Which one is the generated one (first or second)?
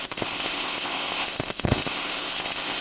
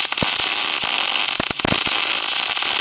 first